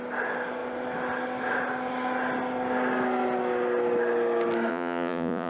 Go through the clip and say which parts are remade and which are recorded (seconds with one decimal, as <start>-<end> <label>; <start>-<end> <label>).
0.0-4.7 recorded; 4.7-5.5 remade